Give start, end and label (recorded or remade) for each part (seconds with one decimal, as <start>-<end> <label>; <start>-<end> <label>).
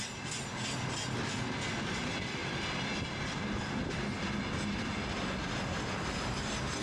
0.0-6.8 recorded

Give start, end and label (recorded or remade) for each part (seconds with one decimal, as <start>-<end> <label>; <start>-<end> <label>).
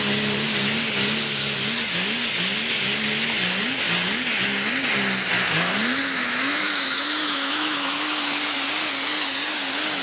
0.0-6.0 recorded; 6.0-8.3 remade; 8.3-10.0 recorded